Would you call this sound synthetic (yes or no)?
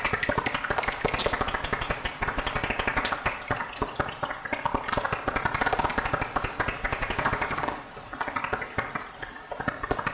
no